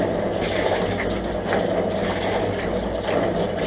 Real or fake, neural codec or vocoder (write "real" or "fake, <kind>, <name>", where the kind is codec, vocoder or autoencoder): real